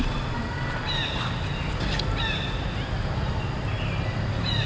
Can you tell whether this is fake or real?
real